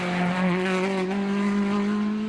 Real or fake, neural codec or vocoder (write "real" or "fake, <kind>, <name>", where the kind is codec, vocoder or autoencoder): real